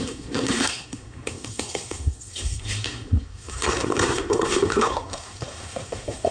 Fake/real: fake